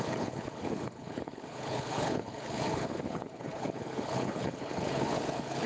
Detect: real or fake fake